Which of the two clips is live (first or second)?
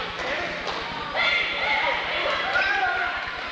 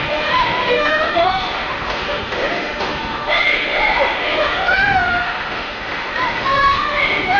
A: first